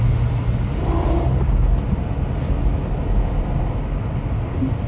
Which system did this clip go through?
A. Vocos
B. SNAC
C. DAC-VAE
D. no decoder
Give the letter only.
D